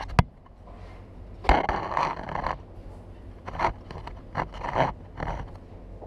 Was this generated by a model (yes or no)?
no